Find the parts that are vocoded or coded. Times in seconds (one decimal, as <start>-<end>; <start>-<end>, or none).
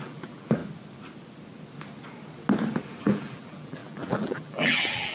0.0-0.6; 3.0-5.1